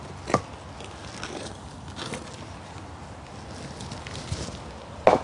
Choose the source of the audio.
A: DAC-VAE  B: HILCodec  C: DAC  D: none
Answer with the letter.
D